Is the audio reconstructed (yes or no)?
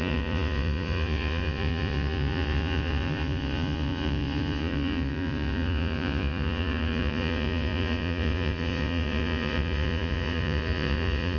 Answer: yes